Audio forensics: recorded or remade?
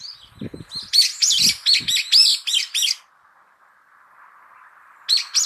recorded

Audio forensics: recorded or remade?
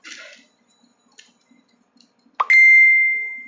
recorded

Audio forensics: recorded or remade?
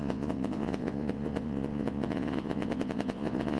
remade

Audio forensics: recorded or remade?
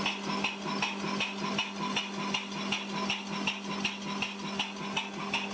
recorded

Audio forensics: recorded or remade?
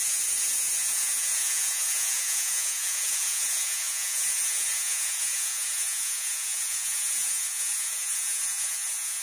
remade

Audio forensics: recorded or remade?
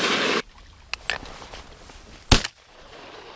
recorded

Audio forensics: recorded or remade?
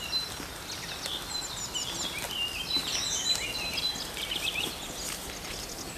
recorded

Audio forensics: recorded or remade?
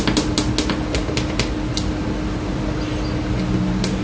recorded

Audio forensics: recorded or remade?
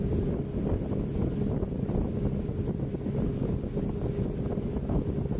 recorded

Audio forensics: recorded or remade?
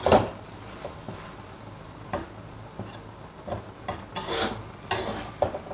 recorded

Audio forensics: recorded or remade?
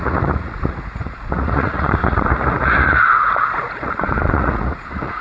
remade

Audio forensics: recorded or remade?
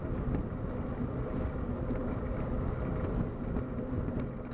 recorded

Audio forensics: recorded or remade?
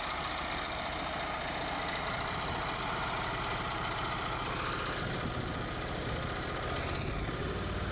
recorded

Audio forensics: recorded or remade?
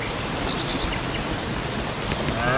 recorded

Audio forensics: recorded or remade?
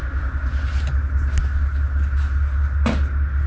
recorded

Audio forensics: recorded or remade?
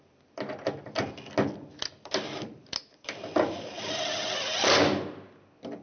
recorded